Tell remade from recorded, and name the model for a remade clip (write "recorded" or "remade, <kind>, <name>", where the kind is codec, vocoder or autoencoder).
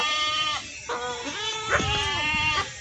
recorded